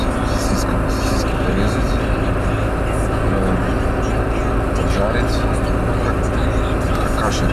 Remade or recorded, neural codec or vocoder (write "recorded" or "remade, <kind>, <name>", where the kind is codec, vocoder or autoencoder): recorded